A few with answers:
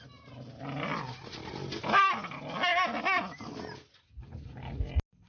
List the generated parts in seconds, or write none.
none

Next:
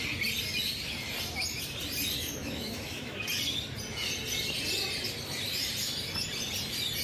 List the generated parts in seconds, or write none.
2.4-3.2 (autoencoder, DAC-VAE)

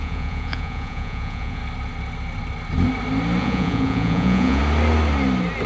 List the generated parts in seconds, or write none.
0.0-1.6 (vocoder, Vocos); 3.4-4.6

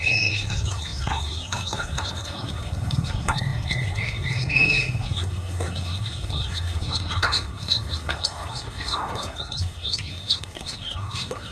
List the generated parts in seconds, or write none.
0.0-11.5 (codec, SNAC)